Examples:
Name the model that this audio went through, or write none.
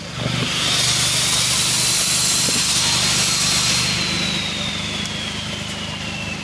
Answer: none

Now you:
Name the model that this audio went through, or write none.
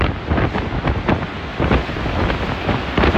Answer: none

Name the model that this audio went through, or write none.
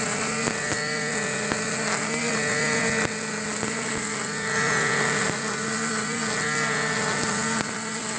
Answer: none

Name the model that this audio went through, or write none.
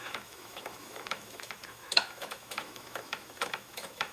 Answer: autoencoder, DAC-VAE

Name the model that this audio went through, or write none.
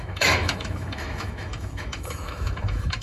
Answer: autoencoder, DAC-VAE